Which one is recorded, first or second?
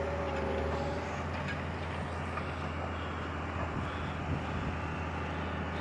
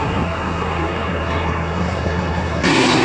first